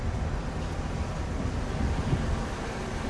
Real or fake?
real